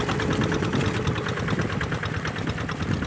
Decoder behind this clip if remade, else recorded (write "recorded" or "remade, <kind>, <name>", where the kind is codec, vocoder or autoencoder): recorded